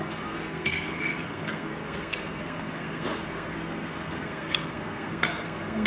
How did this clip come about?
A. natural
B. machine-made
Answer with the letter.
B